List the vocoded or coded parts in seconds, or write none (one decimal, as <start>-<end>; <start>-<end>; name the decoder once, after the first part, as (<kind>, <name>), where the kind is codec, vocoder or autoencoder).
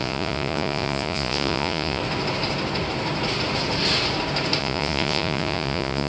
0.0-2.0 (vocoder, Vocos); 4.6-6.1